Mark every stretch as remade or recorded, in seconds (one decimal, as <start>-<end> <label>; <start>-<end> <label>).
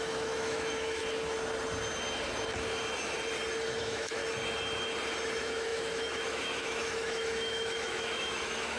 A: 0.0-1.0 remade; 1.0-3.8 recorded; 3.8-4.2 remade; 4.2-5.3 recorded; 5.3-8.8 remade